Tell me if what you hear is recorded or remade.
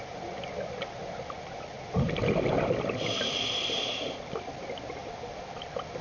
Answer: recorded